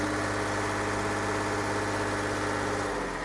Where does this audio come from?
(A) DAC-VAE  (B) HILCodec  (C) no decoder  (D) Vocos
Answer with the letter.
C